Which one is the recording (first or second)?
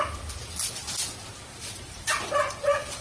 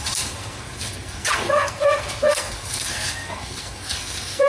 first